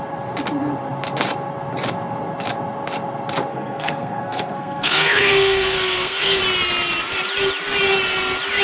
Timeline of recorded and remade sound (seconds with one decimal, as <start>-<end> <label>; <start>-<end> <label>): 0.0-3.5 recorded; 3.5-6.4 remade; 6.4-8.6 recorded